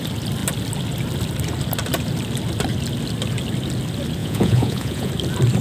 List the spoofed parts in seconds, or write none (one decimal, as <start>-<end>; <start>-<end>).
4.2-5.1